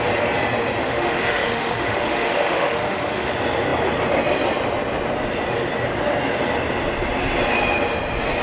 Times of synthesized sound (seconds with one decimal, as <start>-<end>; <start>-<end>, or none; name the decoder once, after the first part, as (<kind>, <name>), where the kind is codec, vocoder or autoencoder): 0.8-3.3 (autoencoder, DAC-VAE)